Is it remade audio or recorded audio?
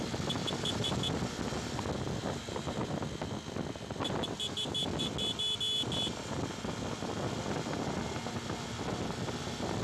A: recorded